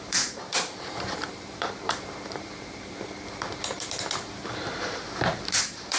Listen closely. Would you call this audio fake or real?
fake